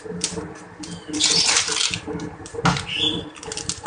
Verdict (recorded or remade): recorded